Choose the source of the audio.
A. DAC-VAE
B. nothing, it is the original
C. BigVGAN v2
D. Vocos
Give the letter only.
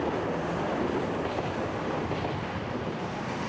C